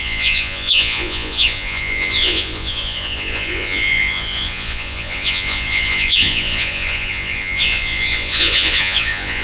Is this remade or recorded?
remade